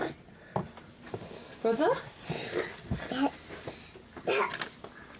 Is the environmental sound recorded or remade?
recorded